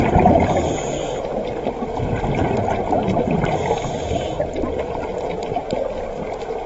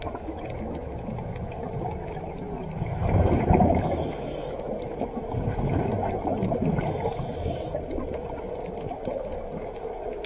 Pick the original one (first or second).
first